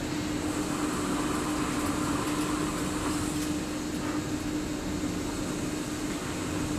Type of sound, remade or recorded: recorded